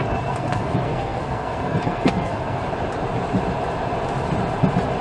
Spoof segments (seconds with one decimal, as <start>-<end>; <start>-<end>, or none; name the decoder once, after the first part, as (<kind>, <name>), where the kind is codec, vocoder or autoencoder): 0.0-2.6 (codec, SNAC)